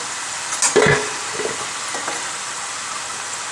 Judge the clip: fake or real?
real